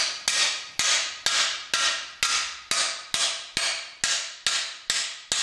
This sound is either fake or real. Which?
real